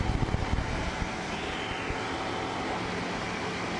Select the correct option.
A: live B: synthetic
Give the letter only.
A